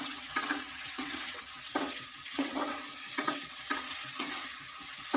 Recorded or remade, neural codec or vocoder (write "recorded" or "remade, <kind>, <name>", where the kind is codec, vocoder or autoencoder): remade, vocoder, WaveNeXt